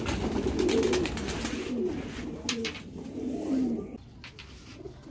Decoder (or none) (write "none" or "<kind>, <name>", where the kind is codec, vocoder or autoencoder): none